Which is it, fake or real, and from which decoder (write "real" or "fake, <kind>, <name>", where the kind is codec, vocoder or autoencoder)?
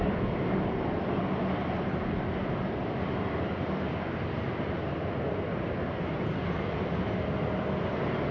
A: real